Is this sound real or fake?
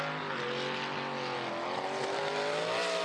real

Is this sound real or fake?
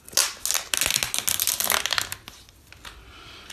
real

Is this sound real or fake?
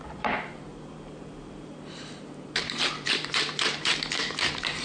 fake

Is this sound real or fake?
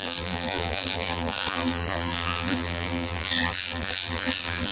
fake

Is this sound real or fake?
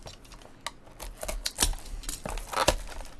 real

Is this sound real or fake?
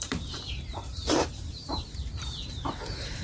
fake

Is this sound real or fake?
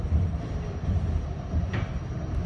fake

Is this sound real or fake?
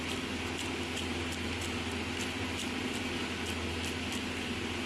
real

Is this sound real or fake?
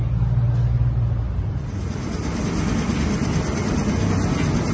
real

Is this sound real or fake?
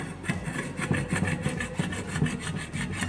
real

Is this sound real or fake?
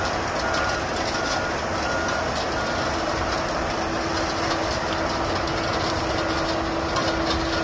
real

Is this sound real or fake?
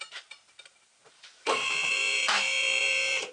fake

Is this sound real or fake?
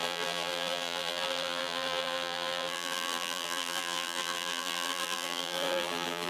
fake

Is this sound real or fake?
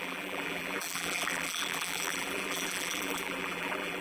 fake